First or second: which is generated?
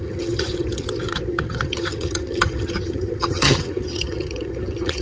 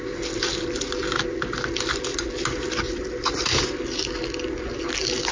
first